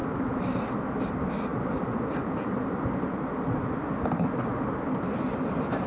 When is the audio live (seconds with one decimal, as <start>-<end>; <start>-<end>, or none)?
0.0-5.9